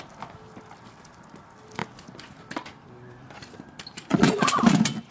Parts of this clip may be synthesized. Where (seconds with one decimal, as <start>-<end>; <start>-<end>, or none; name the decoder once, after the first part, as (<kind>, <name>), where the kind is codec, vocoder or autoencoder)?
4.1-4.6 (vocoder, Vocos)